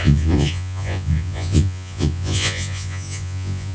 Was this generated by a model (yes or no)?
yes